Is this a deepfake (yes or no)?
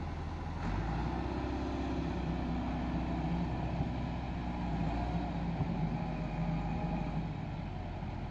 no